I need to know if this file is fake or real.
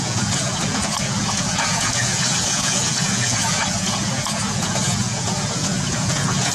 fake